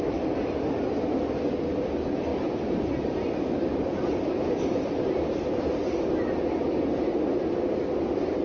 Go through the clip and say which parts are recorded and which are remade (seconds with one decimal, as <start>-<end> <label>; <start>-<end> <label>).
0.0-2.3 recorded; 2.3-4.9 remade; 4.9-8.4 recorded